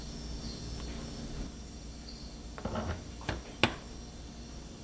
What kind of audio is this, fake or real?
real